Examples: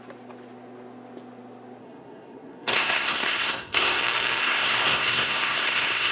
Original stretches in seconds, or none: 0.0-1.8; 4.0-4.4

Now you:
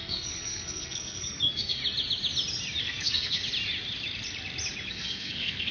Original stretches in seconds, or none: 1.8-2.8; 3.4-4.9